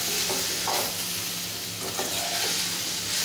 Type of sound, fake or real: real